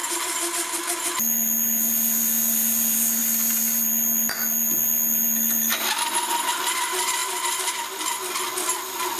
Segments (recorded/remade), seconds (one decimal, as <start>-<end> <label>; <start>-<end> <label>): 0.0-7.2 recorded; 7.2-8.1 remade; 8.1-9.2 recorded